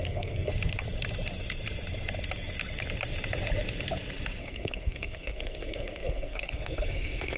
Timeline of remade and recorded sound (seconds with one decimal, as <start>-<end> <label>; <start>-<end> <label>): 0.0-0.5 remade; 0.5-4.4 recorded; 4.4-7.4 remade